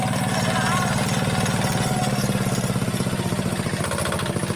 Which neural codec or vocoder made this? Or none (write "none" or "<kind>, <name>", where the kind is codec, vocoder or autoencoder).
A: none